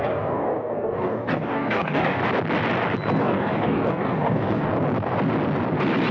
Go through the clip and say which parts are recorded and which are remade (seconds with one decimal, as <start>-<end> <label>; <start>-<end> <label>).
0.0-2.2 remade; 2.2-3.2 recorded; 3.2-4.7 remade; 4.7-6.1 recorded